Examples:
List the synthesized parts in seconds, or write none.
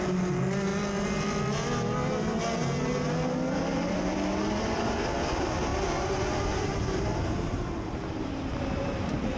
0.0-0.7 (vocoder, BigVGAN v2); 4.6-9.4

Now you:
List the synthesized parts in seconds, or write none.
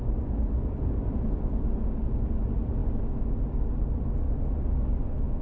none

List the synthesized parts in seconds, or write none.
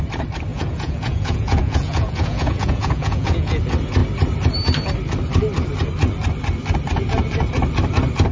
0.5-3.6 (vocoder, Vocos)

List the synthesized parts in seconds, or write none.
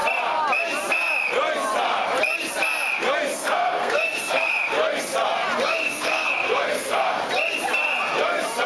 3.3-4.5 (codec, SNAC); 5.8-7.2